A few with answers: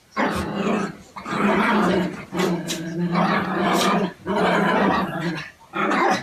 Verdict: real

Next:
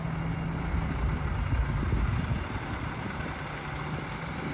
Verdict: real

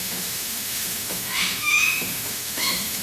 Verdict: fake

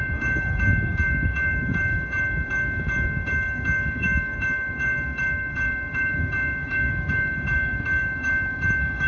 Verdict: fake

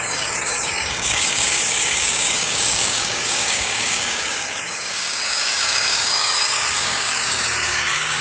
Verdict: fake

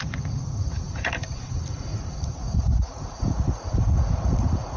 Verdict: fake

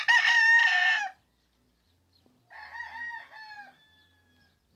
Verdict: real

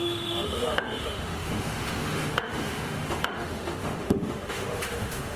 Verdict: fake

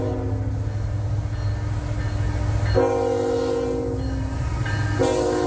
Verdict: real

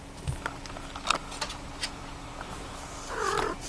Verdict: real